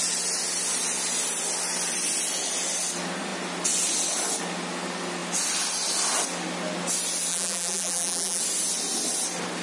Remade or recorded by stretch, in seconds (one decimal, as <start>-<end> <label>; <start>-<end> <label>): 0.0-7.3 recorded; 7.3-8.4 remade; 8.4-9.6 recorded